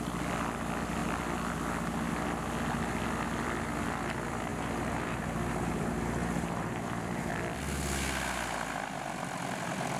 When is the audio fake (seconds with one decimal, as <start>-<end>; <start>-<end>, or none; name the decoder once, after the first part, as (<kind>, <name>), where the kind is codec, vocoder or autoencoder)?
4.5-7.3 (vocoder, BigVGAN v2)